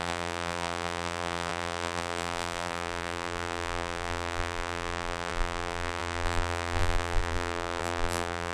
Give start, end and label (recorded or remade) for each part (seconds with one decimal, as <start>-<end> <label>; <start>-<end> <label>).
0.0-8.5 remade